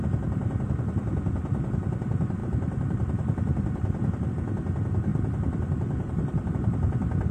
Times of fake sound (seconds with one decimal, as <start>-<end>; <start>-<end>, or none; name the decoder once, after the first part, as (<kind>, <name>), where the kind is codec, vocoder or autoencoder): 2.4-4.3 (vocoder, BigVGAN v2); 5.1-6.5

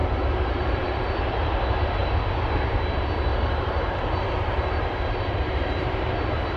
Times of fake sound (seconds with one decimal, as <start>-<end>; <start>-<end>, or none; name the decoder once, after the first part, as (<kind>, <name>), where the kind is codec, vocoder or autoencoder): 0.0-2.1 (vocoder, BigVGAN v2); 3.3-6.1

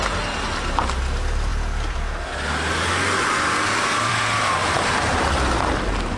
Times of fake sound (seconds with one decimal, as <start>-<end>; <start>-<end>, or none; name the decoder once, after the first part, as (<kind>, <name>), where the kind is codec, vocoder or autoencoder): 4.6-5.3 (vocoder, BigVGAN v2)

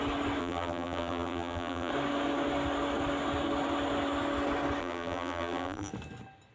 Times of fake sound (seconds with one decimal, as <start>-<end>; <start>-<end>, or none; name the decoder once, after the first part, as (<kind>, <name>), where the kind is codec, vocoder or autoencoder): 0.4-1.9 (vocoder, BigVGAN v2); 4.8-5.9

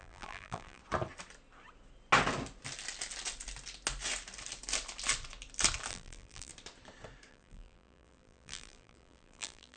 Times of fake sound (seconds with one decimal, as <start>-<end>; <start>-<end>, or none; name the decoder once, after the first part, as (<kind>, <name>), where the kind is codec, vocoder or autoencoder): 0.0-0.8 (vocoder, BigVGAN v2); 5.9-6.5; 7.3-9.8